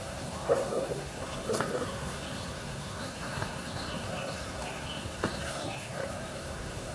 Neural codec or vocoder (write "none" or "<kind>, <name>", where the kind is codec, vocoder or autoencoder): codec, SNAC